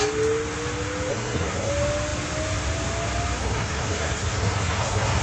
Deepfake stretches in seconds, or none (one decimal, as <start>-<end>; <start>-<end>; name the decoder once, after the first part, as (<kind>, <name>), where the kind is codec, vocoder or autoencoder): 1.1-1.7 (codec, SNAC); 3.4-5.2